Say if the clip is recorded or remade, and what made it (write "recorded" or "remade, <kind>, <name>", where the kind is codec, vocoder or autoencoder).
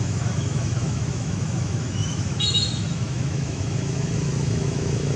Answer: remade, autoencoder, DAC-VAE